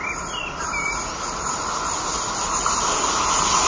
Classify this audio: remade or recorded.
recorded